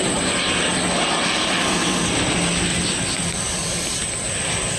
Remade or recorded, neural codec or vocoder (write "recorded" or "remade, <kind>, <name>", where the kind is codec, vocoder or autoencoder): recorded